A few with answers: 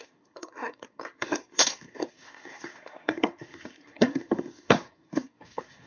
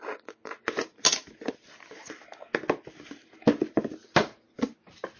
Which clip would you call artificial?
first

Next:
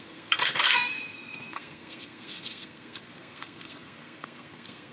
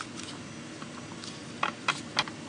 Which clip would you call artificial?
first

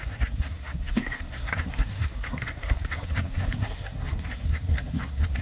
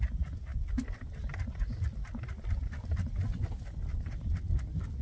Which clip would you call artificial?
first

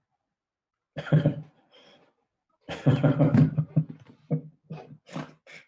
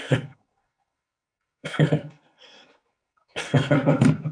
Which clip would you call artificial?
second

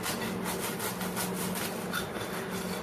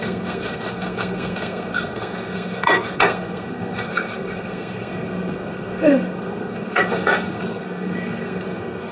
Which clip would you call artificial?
second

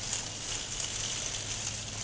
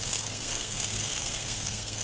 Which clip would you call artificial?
second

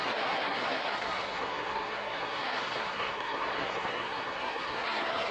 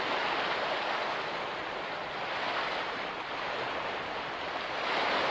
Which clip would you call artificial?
first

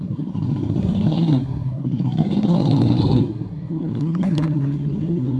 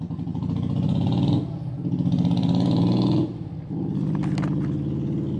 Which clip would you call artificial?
first